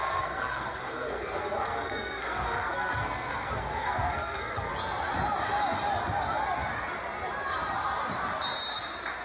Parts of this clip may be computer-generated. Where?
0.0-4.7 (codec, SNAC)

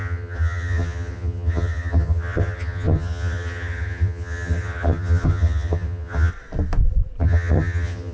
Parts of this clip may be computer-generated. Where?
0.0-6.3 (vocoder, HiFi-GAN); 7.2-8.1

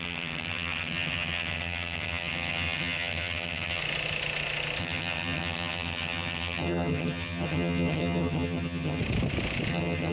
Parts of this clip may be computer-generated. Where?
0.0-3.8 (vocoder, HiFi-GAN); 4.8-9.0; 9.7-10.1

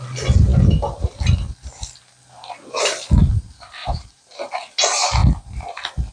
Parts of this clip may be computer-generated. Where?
3.8-4.5 (vocoder, BigVGAN v2)